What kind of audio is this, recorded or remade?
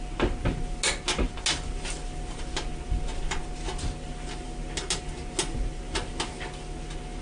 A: recorded